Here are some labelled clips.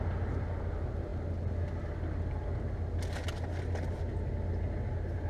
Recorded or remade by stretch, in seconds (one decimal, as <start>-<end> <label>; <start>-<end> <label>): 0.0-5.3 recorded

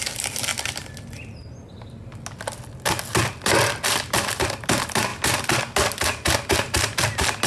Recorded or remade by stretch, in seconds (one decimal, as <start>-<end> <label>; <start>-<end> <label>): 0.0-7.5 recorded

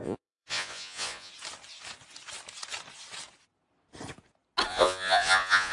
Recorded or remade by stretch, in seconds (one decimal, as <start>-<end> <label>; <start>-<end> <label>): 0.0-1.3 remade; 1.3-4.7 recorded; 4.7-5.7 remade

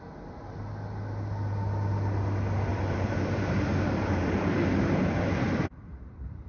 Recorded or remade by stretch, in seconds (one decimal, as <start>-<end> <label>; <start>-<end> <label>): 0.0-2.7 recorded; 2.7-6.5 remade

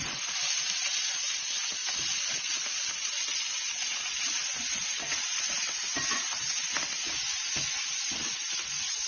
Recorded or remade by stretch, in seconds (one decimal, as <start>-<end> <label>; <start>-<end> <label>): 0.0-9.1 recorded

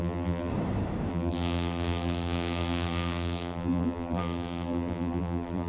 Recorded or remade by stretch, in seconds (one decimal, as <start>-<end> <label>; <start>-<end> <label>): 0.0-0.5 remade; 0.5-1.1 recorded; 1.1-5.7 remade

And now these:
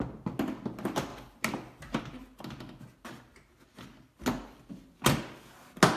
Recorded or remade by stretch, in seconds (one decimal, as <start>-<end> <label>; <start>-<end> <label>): 0.0-6.0 recorded

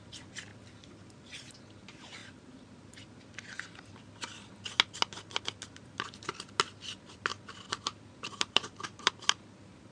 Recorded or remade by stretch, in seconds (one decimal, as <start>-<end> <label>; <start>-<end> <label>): 0.0-7.3 recorded; 7.3-9.1 remade; 9.1-9.9 recorded